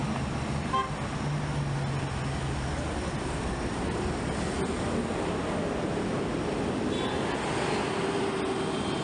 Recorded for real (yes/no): yes